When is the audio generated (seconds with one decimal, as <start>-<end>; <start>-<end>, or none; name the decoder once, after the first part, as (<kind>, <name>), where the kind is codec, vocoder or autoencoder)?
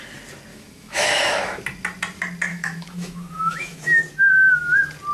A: 0.5-1.6 (autoencoder, DAC-VAE); 2.5-4.0